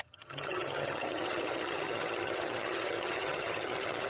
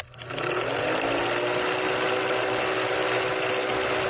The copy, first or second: first